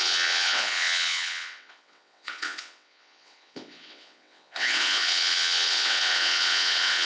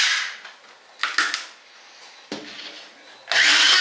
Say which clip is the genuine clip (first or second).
second